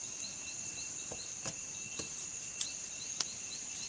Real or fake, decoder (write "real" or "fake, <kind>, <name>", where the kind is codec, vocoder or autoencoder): fake, vocoder, BigVGAN v2